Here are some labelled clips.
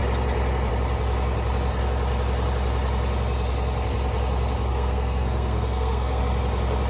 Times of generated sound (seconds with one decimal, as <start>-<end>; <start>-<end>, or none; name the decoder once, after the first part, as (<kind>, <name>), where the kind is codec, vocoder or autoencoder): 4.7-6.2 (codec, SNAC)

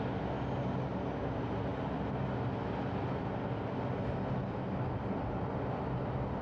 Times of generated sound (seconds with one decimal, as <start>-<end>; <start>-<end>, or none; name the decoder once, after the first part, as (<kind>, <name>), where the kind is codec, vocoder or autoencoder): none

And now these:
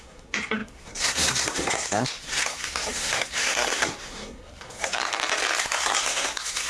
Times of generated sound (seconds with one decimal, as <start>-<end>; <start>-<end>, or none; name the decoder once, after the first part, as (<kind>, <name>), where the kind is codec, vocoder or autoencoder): 0.0-5.1 (codec, SNAC); 5.6-6.7

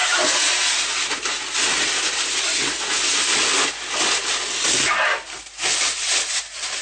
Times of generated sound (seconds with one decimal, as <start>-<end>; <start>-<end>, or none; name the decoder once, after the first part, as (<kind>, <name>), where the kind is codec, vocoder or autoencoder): none

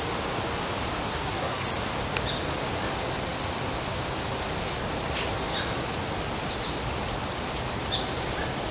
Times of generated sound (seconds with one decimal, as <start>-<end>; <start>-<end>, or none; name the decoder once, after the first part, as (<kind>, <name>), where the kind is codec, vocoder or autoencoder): 1.1-1.6 (codec, SNAC)

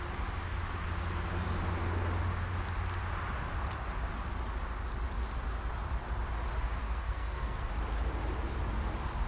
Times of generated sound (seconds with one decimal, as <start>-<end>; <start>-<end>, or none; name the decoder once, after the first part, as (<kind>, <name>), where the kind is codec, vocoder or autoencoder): 6.8-7.7 (codec, SNAC)